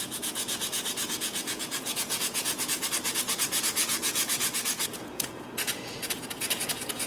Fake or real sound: fake